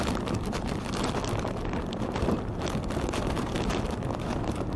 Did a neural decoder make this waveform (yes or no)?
no